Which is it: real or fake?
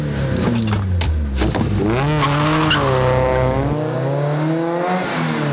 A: real